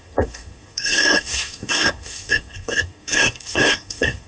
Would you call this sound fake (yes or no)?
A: yes